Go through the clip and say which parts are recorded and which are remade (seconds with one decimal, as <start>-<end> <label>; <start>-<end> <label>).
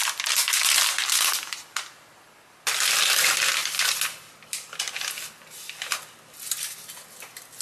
0.0-7.6 recorded